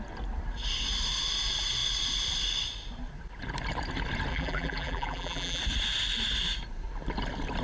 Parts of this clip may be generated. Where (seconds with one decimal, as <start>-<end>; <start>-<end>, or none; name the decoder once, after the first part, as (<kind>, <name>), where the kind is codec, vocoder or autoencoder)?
4.3-5.6 (vocoder, BigVGAN v2)